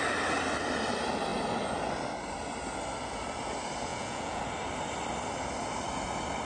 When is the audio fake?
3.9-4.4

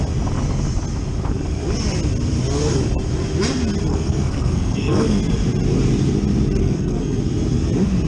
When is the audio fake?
3.9-5.2; 6.6-7.2

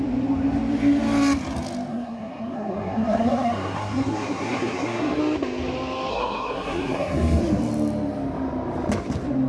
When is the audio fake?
1.9-5.2; 6.1-7.4

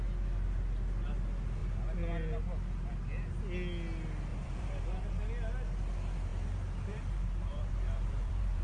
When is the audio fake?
4.3-5.0; 6.3-8.6

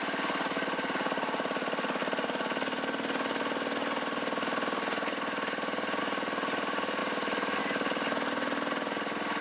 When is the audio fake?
none

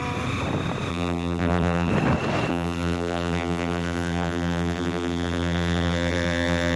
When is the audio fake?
0.9-1.9; 2.5-6.8

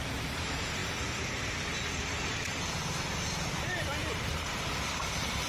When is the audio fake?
0.0-0.8; 4.1-5.5